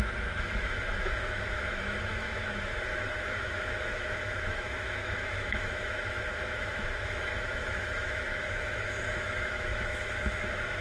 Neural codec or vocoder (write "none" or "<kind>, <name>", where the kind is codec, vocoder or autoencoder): autoencoder, DAC-VAE